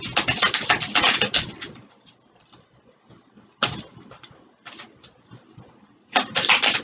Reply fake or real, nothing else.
real